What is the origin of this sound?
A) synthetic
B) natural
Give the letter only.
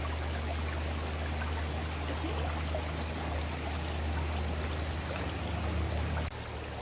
B